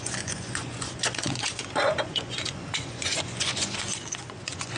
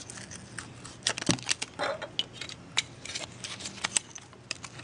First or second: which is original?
second